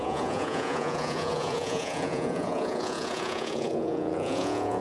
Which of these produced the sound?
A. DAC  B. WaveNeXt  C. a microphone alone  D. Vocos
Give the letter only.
D